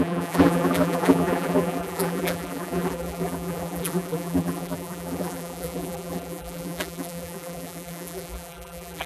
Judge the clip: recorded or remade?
remade